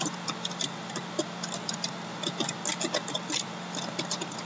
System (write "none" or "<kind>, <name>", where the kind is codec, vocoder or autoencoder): none